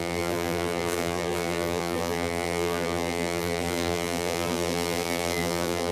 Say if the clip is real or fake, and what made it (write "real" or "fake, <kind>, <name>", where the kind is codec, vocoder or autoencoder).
fake, vocoder, BigVGAN v2